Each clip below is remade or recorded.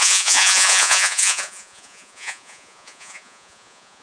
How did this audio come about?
remade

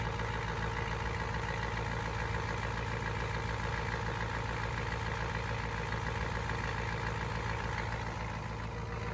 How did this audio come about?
recorded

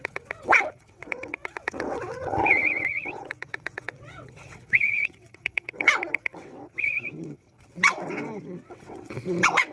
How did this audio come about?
remade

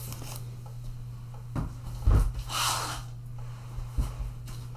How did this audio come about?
recorded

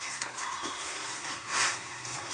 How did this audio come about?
remade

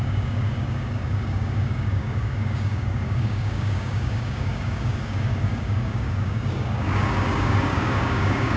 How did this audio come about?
remade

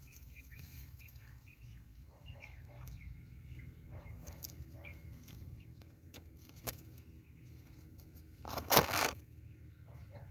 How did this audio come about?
remade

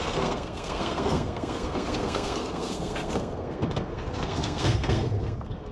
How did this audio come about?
remade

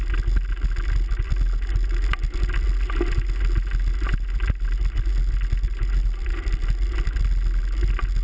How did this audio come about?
recorded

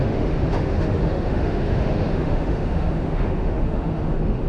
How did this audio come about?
remade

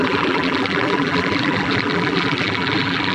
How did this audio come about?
remade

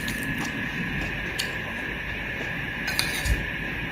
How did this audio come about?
recorded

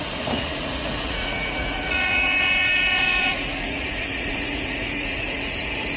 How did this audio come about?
remade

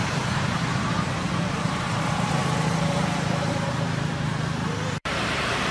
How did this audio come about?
remade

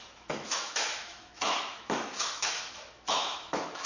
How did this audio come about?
remade